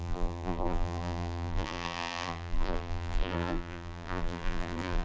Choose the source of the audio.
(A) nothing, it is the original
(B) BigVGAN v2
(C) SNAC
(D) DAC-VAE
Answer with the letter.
B